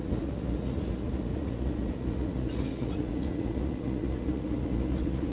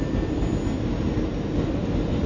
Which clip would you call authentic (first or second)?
second